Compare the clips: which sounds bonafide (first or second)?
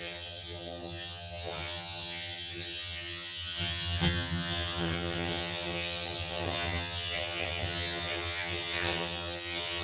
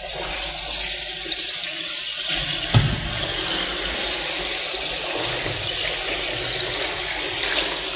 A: second